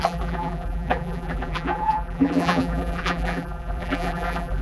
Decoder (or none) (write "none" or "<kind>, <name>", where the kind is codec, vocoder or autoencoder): vocoder, BigVGAN v2